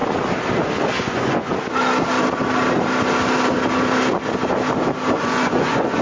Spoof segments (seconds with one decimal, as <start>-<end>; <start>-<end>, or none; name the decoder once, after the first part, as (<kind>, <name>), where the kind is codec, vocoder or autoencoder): 1.0-1.5 (vocoder, Vocos); 5.1-6.0

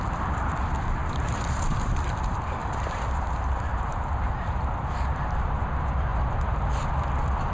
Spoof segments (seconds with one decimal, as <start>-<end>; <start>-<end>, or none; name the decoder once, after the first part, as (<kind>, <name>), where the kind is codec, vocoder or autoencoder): 1.0-5.5 (vocoder, BigVGAN v2); 6.1-6.9